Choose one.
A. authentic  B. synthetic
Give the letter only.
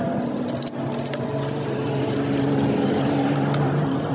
A